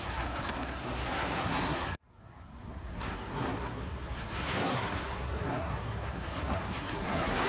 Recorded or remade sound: remade